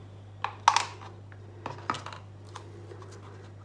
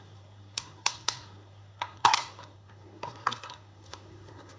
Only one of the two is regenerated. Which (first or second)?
second